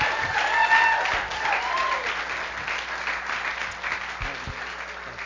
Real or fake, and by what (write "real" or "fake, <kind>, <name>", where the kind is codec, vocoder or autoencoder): real